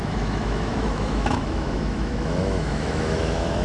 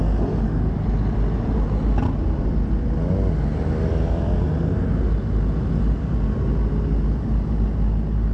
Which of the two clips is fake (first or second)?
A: first